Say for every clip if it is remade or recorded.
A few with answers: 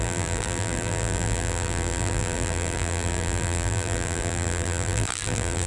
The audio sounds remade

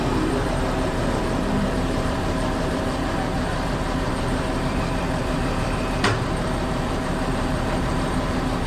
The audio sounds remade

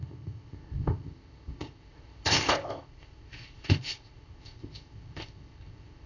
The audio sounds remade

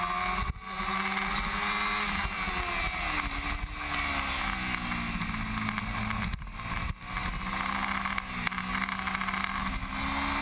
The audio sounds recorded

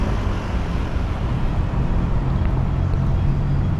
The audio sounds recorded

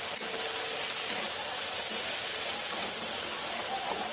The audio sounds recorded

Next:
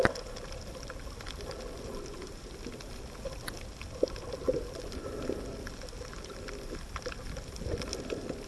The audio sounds recorded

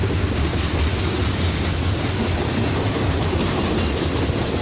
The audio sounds recorded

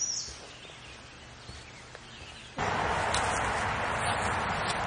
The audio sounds recorded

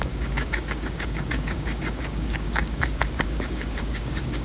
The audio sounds remade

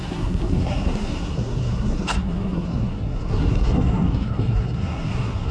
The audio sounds remade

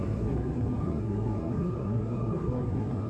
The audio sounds remade